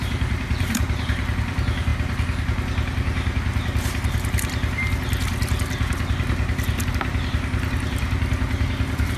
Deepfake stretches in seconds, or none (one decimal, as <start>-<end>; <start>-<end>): 0.0-1.9; 6.9-9.2